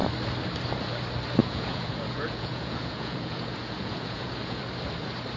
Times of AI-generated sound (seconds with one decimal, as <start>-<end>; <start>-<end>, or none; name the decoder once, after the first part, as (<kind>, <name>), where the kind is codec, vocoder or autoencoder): 1.4-4.6 (vocoder, Vocos)